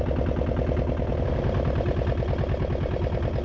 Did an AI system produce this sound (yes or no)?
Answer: no